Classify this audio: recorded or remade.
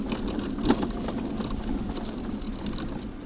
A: recorded